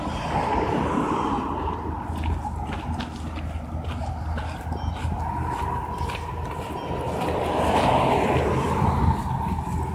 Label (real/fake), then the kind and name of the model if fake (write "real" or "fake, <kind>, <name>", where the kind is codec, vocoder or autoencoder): real